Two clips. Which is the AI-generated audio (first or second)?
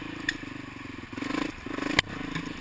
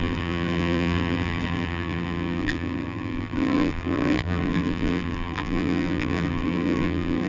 second